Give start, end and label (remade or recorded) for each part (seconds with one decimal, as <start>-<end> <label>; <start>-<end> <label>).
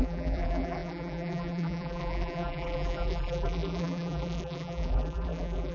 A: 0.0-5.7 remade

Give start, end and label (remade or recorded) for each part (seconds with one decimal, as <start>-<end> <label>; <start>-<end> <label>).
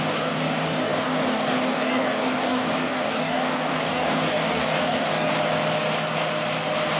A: 0.0-5.3 remade; 5.3-7.0 recorded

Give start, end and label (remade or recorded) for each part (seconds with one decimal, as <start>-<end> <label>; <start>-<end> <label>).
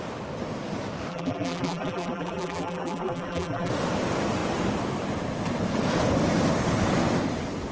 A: 0.0-1.1 recorded; 1.1-3.7 remade; 3.7-7.7 recorded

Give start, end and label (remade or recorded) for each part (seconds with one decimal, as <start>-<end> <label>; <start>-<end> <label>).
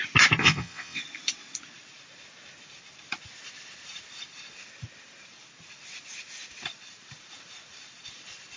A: 0.0-0.4 recorded; 0.4-1.0 remade; 1.0-8.6 recorded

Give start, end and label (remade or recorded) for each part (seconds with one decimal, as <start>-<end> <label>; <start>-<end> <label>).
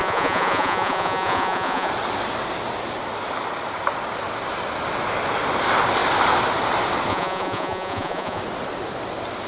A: 0.0-1.9 remade; 1.9-7.1 recorded; 7.1-8.4 remade; 8.4-9.5 recorded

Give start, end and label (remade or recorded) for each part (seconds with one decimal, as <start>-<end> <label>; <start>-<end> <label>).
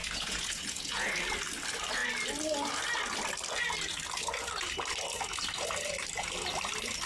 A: 0.0-1.1 remade; 1.1-7.1 recorded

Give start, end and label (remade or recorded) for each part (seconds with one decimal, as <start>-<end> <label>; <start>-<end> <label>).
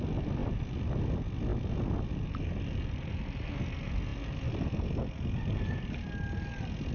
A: 0.0-0.4 recorded; 0.4-0.9 remade; 0.9-6.9 recorded